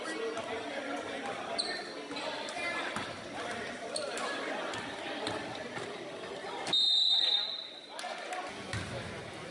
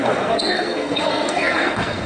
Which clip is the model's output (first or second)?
second